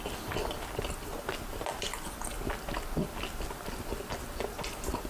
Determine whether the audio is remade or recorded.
recorded